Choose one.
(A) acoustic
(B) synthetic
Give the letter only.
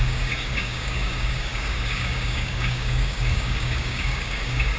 B